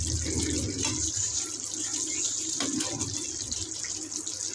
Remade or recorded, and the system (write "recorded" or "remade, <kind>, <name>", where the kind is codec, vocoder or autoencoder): recorded